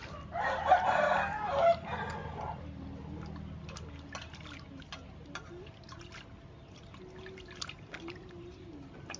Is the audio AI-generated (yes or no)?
no